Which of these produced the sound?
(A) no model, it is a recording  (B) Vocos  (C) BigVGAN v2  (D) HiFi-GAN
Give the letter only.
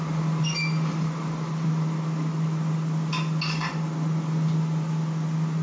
A